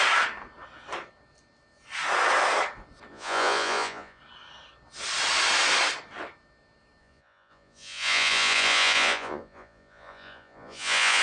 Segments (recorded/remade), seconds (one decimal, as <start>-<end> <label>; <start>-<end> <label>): 0.0-3.1 recorded; 3.1-4.2 remade; 4.2-7.0 recorded; 7.0-11.2 remade

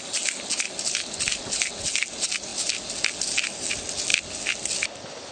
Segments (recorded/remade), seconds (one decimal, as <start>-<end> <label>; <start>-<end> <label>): 0.0-5.3 recorded

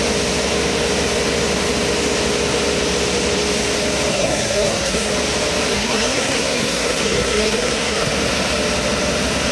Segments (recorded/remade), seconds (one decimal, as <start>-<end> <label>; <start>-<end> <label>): 0.0-4.1 recorded; 4.1-5.1 remade; 5.1-5.7 recorded; 5.7-8.1 remade; 8.1-9.5 recorded

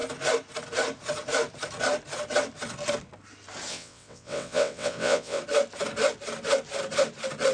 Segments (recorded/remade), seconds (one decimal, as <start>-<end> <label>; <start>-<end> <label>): 0.0-3.7 recorded; 3.7-5.4 remade; 5.4-7.5 recorded

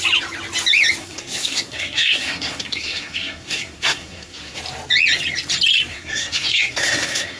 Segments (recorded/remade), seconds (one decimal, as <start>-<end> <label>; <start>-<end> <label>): 0.0-1.0 recorded; 1.0-4.6 remade; 4.6-5.9 recorded; 5.9-7.4 remade

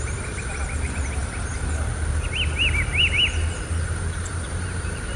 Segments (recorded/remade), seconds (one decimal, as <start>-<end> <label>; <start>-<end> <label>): 0.0-5.2 recorded